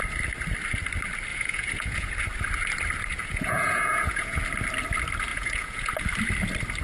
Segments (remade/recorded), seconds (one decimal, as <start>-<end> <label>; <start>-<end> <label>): 0.0-1.3 recorded; 1.3-2.1 remade; 2.1-3.2 recorded; 3.2-4.4 remade; 4.4-5.3 recorded; 5.3-5.9 remade; 5.9-6.8 recorded